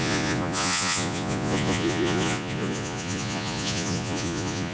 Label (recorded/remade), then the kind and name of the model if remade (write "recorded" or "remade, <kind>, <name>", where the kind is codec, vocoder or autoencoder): remade, vocoder, Vocos